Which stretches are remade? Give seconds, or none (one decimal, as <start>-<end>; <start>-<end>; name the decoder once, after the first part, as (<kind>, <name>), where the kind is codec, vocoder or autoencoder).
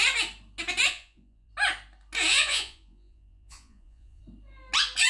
0.9-1.5 (vocoder, Vocos); 2.3-4.2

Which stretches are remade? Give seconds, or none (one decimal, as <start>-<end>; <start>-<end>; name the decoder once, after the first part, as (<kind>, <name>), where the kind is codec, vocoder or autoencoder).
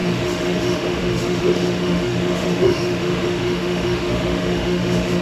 0.0-5.2 (autoencoder, DAC-VAE)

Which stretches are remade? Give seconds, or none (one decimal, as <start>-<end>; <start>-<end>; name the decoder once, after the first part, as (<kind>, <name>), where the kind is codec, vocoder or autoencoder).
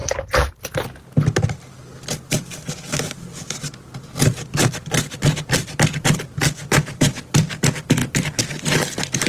0.0-0.6 (vocoder, BigVGAN v2); 6.6-7.4; 8.0-8.6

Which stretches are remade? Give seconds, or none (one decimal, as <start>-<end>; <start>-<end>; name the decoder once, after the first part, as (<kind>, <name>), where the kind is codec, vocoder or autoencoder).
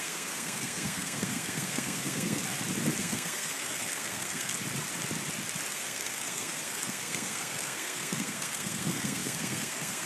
0.0-2.4 (codec, SNAC); 3.0-4.5; 5.7-10.1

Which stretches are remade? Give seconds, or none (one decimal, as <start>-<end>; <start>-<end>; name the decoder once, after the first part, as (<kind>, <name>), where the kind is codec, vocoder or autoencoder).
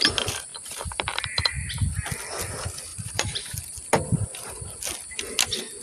0.5-1.6 (vocoder, BigVGAN v2); 2.9-4.8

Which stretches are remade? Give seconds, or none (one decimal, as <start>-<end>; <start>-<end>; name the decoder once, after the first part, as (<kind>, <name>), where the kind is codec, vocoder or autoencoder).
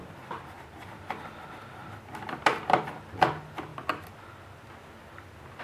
none